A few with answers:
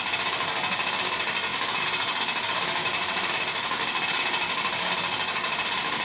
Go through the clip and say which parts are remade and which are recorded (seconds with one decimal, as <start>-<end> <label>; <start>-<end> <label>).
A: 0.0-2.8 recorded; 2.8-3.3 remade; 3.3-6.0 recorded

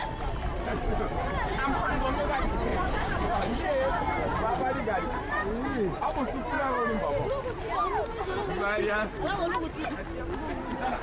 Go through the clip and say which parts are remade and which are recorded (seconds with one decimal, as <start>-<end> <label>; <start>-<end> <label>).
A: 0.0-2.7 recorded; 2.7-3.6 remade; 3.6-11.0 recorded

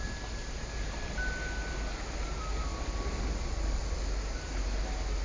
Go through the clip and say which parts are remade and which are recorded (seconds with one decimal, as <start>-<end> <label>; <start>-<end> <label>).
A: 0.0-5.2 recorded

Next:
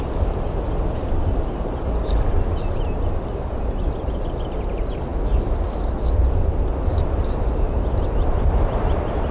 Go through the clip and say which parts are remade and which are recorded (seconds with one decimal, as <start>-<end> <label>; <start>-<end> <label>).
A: 0.0-9.3 recorded

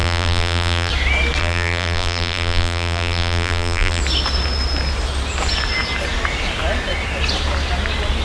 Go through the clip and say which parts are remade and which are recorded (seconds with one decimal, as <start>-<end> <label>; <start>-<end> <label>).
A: 0.0-0.9 remade; 0.9-1.4 recorded; 1.4-4.0 remade; 4.0-8.2 recorded

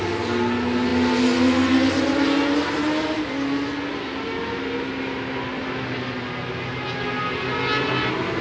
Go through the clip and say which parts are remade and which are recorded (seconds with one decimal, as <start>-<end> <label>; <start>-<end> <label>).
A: 0.0-8.4 recorded

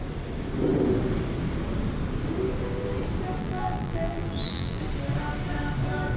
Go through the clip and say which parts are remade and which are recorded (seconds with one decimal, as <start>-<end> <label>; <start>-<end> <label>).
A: 0.0-3.4 recorded; 3.4-4.8 remade; 4.8-6.2 recorded

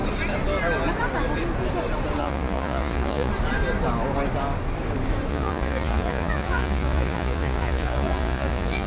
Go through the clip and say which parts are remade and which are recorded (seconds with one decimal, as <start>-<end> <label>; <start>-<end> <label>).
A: 0.0-2.2 recorded; 2.2-3.3 remade; 3.3-5.3 recorded; 5.3-8.9 remade